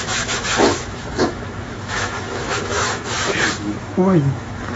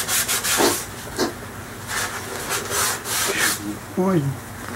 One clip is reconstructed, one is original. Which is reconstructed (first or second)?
first